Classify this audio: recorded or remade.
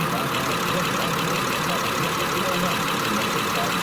recorded